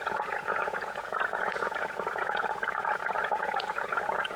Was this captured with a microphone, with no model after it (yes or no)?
no